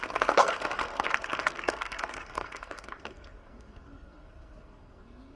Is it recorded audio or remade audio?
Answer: remade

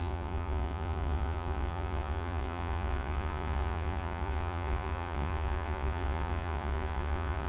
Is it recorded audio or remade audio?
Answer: remade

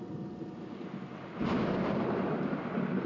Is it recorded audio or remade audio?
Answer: recorded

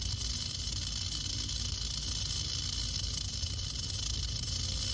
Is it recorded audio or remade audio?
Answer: recorded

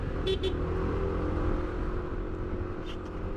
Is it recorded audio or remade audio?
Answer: recorded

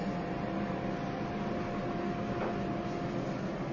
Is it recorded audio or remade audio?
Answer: recorded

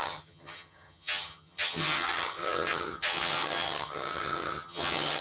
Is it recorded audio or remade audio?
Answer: remade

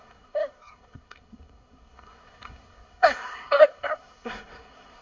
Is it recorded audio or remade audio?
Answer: remade